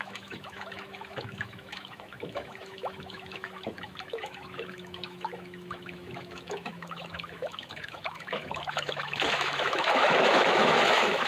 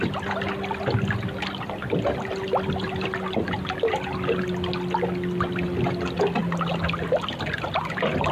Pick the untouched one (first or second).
second